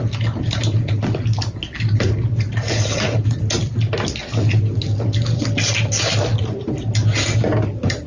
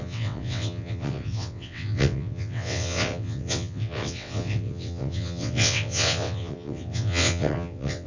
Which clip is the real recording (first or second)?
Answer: first